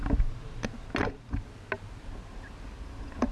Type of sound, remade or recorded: recorded